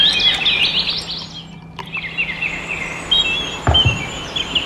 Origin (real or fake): real